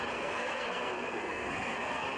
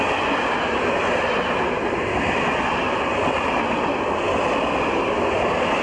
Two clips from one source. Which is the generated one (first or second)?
first